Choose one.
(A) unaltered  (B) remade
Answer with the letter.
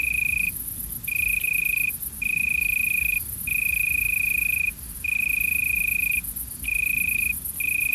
B